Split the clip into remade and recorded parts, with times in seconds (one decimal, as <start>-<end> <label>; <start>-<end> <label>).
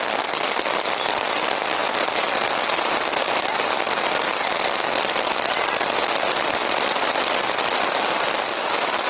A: 0.0-9.1 recorded